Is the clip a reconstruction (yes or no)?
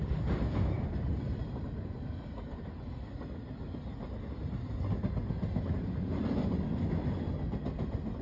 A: no